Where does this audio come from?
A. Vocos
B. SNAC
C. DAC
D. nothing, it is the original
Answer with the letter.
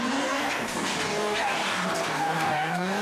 C